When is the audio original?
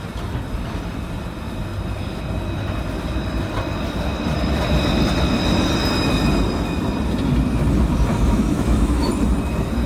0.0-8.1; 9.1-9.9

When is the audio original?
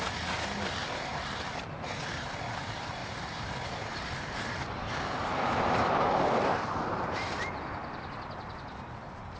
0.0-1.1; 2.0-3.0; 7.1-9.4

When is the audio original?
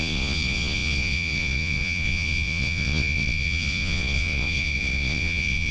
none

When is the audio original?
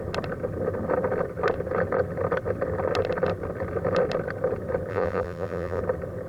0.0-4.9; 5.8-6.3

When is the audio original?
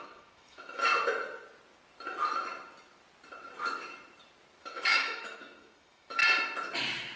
0.9-4.6; 6.2-7.2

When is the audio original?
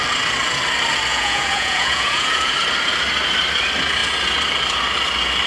0.0-1.1; 2.5-5.5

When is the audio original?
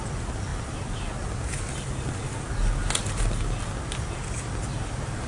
0.0-5.3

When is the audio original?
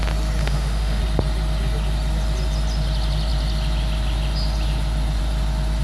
0.0-0.4; 1.0-5.8